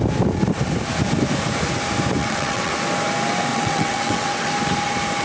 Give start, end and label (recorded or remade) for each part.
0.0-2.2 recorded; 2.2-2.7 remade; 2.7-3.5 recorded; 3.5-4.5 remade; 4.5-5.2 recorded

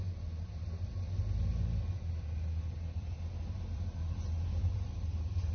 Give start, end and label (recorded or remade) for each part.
0.0-4.6 recorded; 4.6-5.5 remade

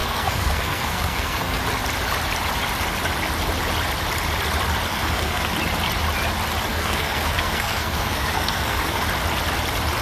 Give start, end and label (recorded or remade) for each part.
0.0-1.6 remade; 1.6-4.9 recorded; 4.9-5.5 remade; 5.5-6.7 recorded; 6.7-9.0 remade; 9.0-10.0 recorded

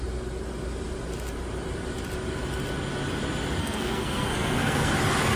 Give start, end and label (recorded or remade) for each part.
0.0-3.6 recorded; 3.6-4.9 remade; 4.9-5.4 recorded

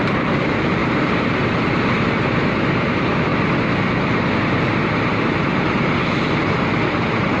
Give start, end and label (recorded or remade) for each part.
0.0-3.3 remade; 3.3-4.4 recorded; 4.4-6.0 remade; 6.0-7.0 recorded; 7.0-7.4 remade